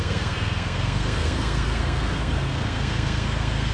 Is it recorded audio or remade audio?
remade